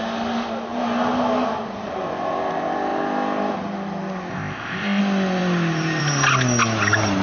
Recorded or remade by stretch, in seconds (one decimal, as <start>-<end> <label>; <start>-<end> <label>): 0.0-4.3 recorded; 4.3-5.0 remade; 5.0-7.2 recorded